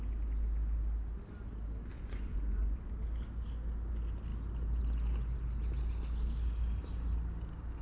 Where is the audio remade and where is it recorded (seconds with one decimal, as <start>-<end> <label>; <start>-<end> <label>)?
0.0-1.9 recorded; 1.9-2.9 remade; 2.9-7.8 recorded